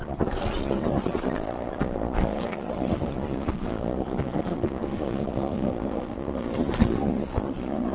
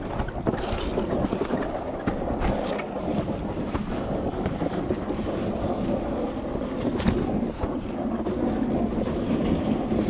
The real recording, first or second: second